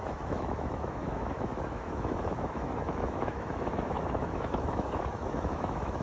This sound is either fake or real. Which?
fake